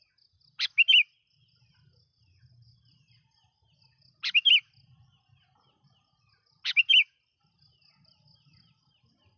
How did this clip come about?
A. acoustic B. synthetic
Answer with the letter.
A